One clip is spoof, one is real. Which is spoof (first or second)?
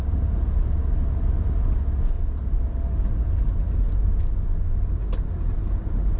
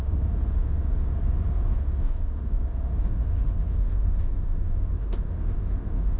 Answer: second